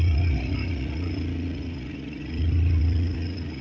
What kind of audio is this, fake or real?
fake